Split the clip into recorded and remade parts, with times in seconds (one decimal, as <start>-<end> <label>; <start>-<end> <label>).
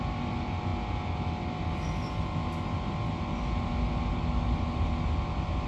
0.0-5.7 recorded